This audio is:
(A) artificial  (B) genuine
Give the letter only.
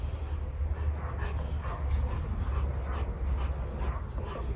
B